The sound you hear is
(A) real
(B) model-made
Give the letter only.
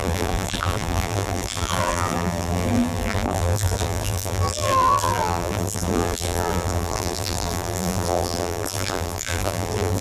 B